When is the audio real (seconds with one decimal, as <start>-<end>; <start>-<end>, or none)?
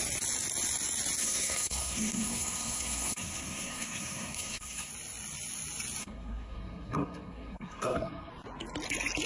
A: 0.0-1.2; 4.9-6.0; 8.3-9.3